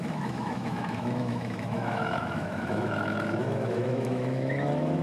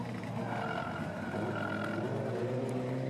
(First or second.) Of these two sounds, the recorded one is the second